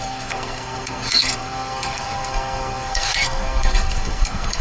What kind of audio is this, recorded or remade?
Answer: remade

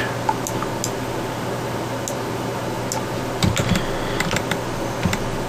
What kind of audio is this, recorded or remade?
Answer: recorded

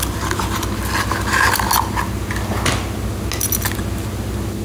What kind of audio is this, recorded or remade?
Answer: recorded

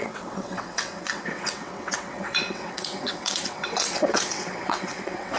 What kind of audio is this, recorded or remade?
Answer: remade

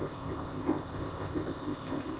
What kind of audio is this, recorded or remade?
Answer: remade